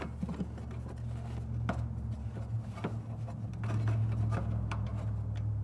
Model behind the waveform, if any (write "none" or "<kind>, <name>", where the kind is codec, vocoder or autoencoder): none